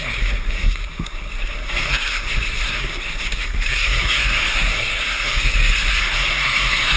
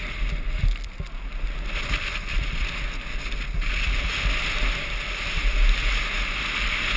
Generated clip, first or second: first